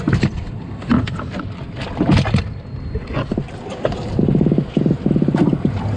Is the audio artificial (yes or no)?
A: no